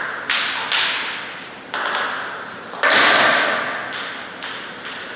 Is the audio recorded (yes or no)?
yes